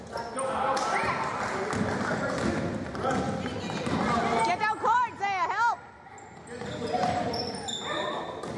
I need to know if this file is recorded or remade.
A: recorded